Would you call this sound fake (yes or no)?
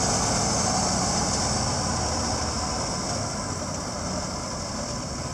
no